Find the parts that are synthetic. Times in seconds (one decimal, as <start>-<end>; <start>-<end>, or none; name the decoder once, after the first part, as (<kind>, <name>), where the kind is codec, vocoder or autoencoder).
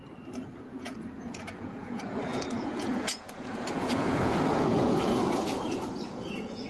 0.7-6.7 (vocoder, Vocos)